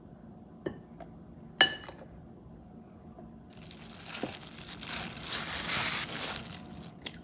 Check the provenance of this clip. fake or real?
real